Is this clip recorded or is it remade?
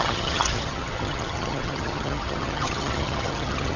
remade